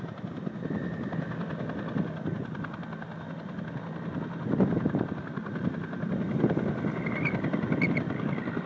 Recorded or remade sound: recorded